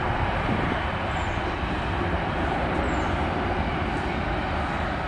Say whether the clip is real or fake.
real